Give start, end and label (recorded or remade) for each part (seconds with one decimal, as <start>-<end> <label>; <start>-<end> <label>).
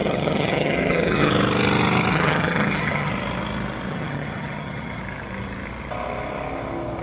0.0-1.3 remade; 1.3-2.1 recorded; 2.1-3.1 remade; 3.1-3.9 recorded; 3.9-5.0 remade; 5.0-7.0 recorded